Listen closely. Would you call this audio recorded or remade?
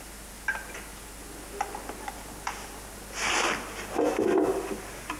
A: recorded